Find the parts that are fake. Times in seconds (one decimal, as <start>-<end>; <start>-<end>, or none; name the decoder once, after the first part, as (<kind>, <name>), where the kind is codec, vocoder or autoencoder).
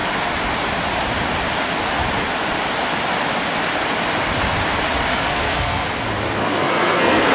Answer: 5.1-5.9 (codec, SNAC); 6.4-7.3